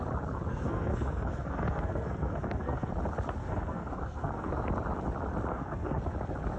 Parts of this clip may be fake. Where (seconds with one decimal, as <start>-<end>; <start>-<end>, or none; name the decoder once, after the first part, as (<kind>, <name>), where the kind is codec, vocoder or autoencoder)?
0.5-2.9 (codec, SNAC); 3.4-4.5; 5.5-6.0